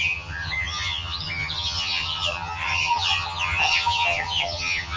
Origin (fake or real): fake